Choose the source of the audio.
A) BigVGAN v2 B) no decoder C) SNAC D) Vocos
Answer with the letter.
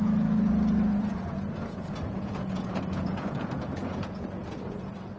D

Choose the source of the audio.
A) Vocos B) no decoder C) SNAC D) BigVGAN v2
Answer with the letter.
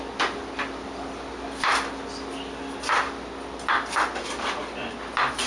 B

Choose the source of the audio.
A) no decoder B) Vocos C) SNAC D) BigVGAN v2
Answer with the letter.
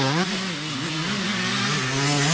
A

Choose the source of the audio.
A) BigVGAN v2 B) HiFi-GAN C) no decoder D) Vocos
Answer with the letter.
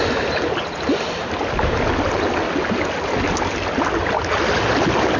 C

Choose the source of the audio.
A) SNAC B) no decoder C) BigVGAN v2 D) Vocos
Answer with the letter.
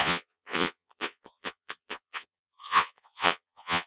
D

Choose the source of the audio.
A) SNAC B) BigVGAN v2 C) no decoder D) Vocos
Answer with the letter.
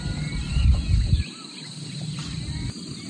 C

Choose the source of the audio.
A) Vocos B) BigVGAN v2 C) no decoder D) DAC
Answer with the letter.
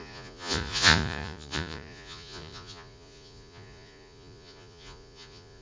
A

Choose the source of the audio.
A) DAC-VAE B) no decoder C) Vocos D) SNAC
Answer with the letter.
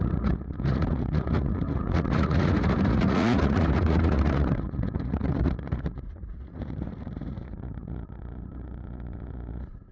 C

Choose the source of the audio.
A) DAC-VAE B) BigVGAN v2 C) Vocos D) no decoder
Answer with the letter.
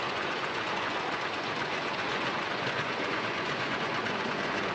C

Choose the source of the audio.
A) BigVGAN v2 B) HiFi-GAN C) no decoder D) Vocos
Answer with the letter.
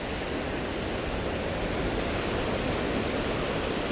C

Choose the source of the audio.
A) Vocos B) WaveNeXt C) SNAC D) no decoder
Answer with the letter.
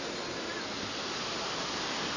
D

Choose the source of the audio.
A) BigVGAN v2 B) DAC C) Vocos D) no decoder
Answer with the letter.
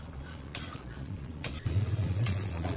C